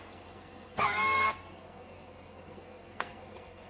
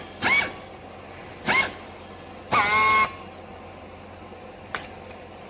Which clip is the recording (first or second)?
second